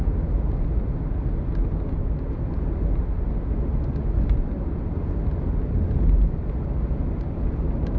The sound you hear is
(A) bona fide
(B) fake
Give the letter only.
A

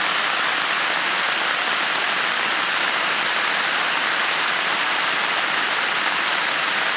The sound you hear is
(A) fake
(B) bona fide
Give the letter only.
B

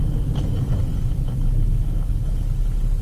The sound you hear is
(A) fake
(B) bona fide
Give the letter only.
B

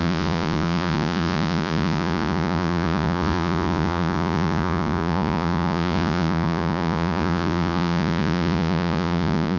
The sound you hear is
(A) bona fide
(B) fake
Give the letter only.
B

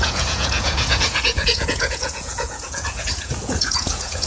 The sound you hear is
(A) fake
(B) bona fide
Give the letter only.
A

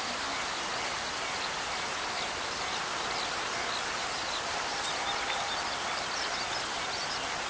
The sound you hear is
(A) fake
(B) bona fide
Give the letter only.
B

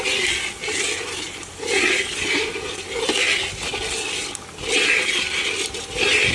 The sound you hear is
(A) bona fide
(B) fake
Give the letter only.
A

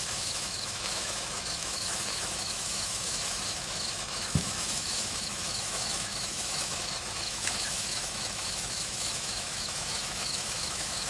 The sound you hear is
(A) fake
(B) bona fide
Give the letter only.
A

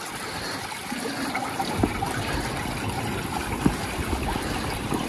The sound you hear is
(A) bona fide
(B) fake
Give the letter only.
A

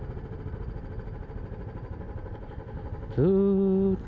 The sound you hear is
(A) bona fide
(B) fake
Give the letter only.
A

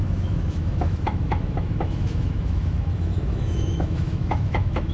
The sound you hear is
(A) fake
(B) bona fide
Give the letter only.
A